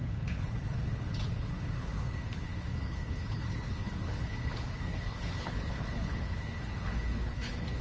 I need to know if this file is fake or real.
fake